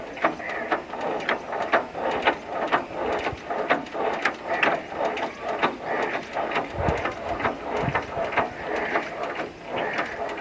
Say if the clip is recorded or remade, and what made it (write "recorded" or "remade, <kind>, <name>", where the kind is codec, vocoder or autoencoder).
recorded